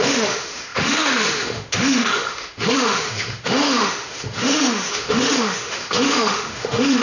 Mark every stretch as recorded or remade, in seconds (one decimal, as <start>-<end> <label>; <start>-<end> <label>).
0.0-7.0 remade